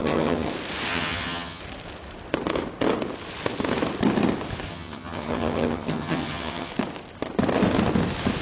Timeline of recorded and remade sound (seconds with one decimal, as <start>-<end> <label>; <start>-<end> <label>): 0.0-0.5 remade; 0.5-0.9 recorded; 0.9-1.6 remade; 1.6-4.7 recorded; 4.7-6.7 remade; 6.7-8.4 recorded